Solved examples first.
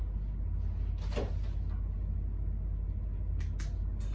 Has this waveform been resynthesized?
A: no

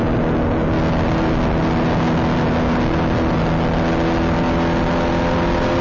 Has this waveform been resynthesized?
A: no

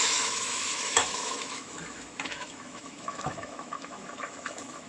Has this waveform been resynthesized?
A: yes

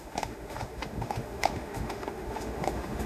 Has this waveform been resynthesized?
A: yes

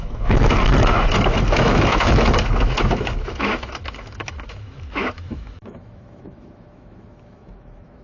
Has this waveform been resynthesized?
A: yes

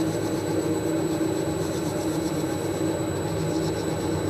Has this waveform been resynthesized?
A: no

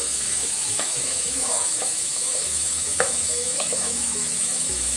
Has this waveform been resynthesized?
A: yes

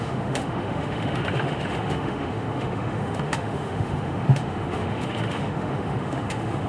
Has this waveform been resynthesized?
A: yes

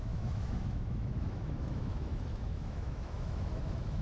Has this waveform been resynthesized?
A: yes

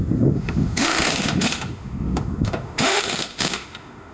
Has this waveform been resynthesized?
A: yes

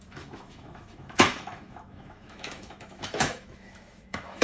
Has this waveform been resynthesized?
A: yes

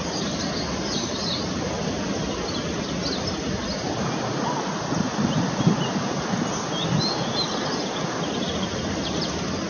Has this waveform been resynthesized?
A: no